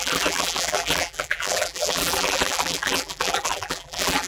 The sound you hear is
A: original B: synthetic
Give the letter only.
B